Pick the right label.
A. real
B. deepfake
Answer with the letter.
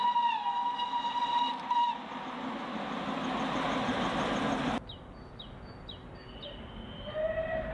A